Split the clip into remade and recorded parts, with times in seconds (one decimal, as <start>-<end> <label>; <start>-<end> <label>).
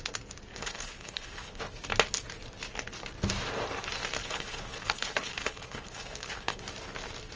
0.0-0.5 recorded; 0.5-1.6 remade; 1.6-4.2 recorded; 4.2-6.6 remade; 6.6-7.4 recorded